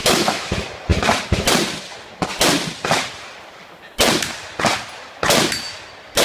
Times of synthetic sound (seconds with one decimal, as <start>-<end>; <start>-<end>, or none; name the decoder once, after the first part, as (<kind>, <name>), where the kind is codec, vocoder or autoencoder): 0.0-0.5 (autoencoder, DAC-VAE)